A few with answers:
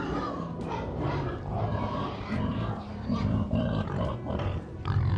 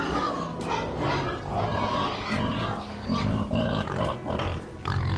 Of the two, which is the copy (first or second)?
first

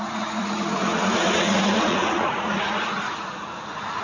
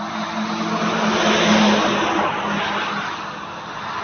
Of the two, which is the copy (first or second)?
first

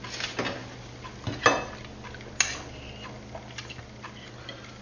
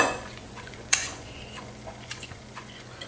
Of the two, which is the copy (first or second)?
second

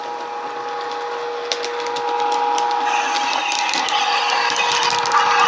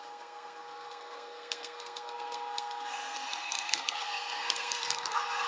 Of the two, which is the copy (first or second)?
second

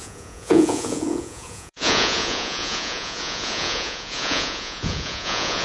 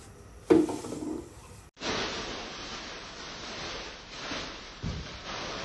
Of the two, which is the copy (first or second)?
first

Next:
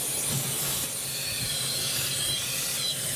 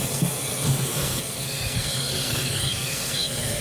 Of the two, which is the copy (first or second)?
second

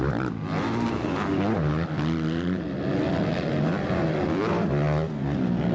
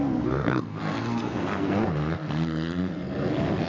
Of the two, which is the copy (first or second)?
second